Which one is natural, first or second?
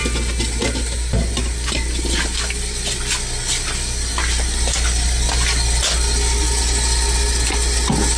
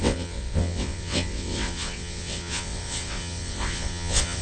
first